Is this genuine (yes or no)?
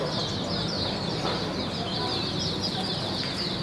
yes